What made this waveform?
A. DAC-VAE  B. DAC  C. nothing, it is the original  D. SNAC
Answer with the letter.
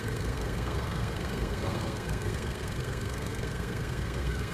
D